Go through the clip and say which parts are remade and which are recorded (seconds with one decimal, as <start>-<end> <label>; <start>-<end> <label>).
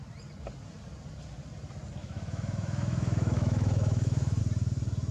0.0-2.0 recorded; 2.0-4.4 remade; 4.4-5.1 recorded